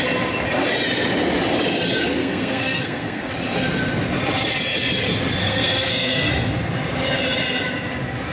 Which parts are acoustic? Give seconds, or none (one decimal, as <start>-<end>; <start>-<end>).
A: 0.0-2.0; 3.3-5.4; 6.3-8.3